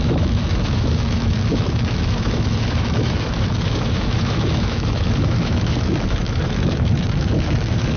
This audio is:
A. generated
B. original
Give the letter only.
A